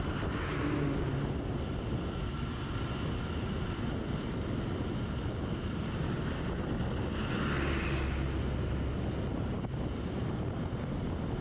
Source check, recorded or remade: recorded